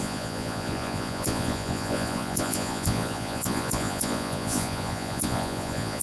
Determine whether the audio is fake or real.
fake